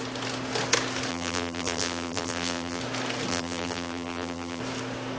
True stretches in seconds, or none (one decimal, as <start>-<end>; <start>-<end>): 0.0-1.1; 2.8-3.3; 4.6-5.2